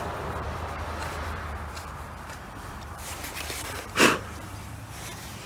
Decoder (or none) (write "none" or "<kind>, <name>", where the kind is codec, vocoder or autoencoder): vocoder, BigVGAN v2